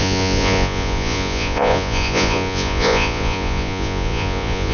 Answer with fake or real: fake